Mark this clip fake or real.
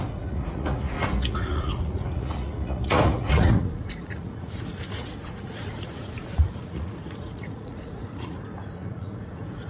fake